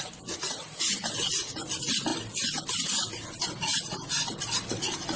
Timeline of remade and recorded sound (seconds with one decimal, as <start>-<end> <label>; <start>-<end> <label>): 0.0-5.2 recorded